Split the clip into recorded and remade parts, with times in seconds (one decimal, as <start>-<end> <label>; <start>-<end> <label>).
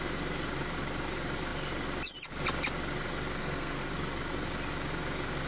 0.0-3.4 recorded; 3.4-3.9 remade; 3.9-5.5 recorded